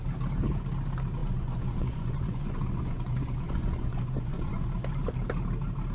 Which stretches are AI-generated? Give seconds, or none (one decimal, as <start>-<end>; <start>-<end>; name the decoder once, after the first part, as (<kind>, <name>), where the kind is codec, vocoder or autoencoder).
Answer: 1.2-4.7 (vocoder, Vocos)